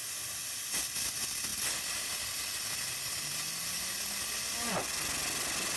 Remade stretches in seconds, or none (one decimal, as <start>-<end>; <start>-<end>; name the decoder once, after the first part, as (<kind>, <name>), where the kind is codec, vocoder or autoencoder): none